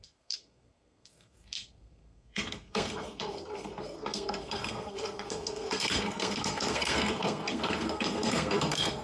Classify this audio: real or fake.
fake